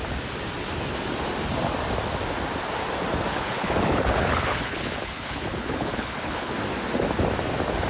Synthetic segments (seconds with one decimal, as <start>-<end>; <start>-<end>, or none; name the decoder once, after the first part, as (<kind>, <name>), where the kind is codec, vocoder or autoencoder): 3.3-6.5 (codec, HILCodec)